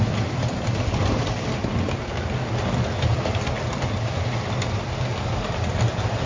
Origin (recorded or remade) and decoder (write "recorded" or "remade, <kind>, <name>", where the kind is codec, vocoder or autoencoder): recorded